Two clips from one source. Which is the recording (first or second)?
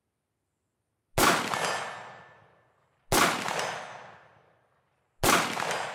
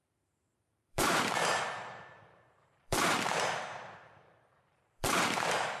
first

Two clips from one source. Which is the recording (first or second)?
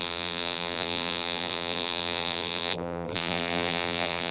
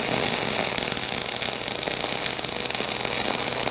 second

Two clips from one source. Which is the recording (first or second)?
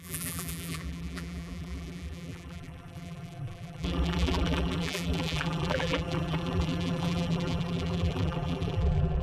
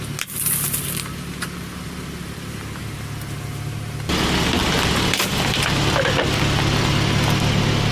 second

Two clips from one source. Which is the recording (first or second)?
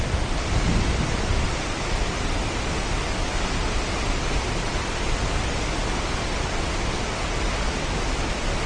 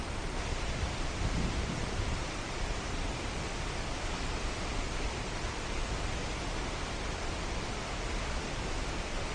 first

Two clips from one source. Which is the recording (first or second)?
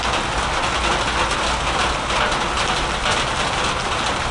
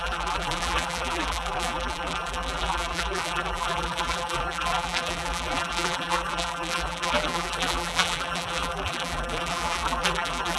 first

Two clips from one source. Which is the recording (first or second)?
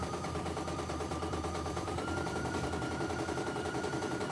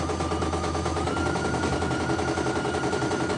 second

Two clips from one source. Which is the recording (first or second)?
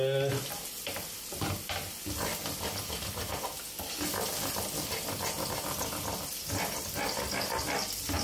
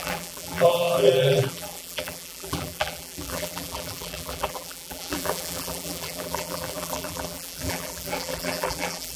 first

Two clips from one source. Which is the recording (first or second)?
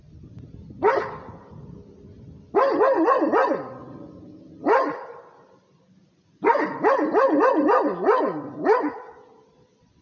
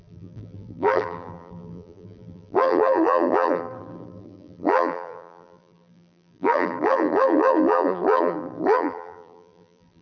first